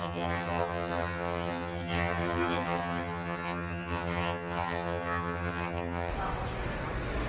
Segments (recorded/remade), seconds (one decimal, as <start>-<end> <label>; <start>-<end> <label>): 0.0-6.1 remade; 6.1-7.3 recorded